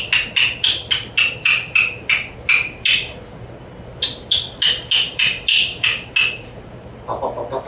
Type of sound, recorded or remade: recorded